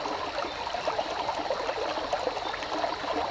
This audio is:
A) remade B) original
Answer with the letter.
B